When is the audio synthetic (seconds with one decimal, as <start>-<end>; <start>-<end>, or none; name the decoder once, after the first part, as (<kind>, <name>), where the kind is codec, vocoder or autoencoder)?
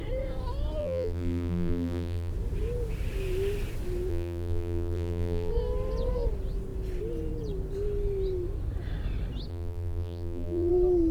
0.8-2.3 (vocoder, BigVGAN v2); 4.1-5.5; 9.5-10.7